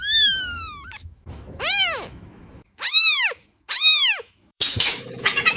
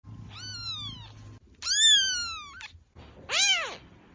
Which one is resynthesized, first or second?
first